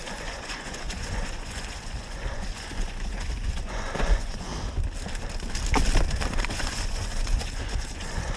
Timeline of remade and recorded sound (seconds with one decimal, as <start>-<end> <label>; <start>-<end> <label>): 0.0-4.5 remade; 4.5-6.5 recorded; 6.5-8.4 remade